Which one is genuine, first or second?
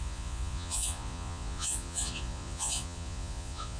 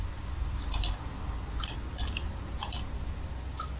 second